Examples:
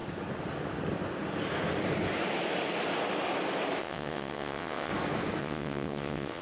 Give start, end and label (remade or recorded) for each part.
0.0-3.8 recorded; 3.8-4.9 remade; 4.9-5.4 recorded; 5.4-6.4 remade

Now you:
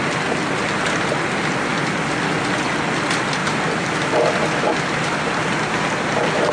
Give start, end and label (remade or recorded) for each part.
0.0-6.5 recorded

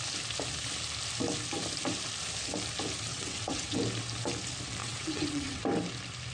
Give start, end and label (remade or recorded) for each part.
0.0-3.1 recorded; 3.1-3.8 remade; 3.8-4.8 recorded; 4.8-5.6 remade; 5.6-6.3 recorded

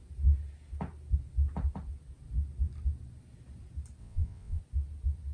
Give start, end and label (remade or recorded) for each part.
0.0-4.0 recorded; 4.0-4.6 remade; 4.6-5.3 recorded

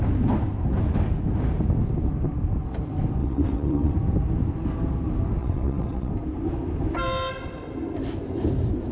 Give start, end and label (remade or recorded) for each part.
0.0-3.2 recorded; 3.2-3.9 remade; 3.9-5.4 recorded; 5.4-6.1 remade; 6.1-8.9 recorded